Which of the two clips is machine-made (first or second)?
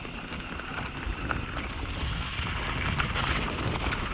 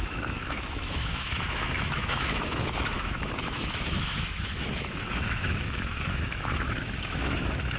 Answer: second